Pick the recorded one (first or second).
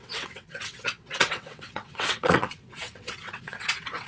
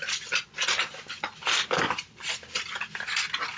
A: second